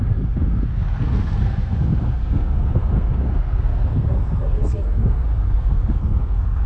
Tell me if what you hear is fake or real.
fake